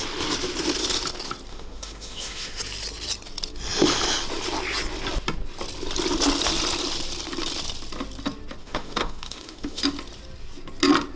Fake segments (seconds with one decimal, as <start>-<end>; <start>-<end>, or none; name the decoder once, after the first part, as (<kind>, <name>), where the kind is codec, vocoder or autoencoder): 1.5-2.6 (autoencoder, DAC-VAE); 8.6-9.8